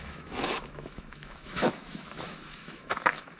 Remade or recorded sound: remade